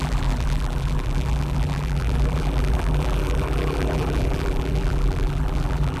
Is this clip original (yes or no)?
no